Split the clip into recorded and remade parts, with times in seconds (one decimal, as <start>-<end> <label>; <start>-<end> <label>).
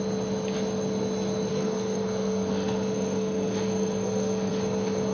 0.0-1.5 recorded; 1.5-4.5 remade; 4.5-5.1 recorded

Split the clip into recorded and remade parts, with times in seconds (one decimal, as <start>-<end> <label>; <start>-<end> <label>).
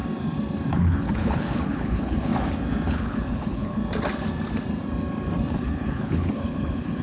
0.0-0.7 recorded; 0.7-2.3 remade; 2.3-2.9 recorded; 2.9-3.8 remade; 3.8-5.5 recorded; 5.5-7.0 remade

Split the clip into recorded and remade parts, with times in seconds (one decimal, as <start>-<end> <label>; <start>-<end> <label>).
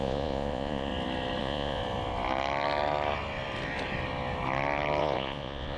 0.0-0.9 remade; 0.9-1.4 recorded; 1.4-1.8 remade; 1.8-5.0 recorded; 5.0-5.8 remade